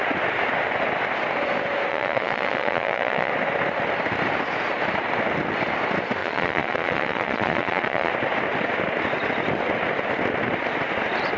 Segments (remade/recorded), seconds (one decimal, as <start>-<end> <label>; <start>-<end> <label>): 0.0-1.9 recorded; 1.9-3.3 remade; 3.3-6.2 recorded; 6.2-8.1 remade; 8.1-11.4 recorded